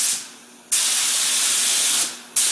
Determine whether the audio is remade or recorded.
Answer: recorded